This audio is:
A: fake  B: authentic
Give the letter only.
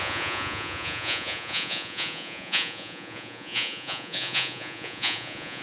A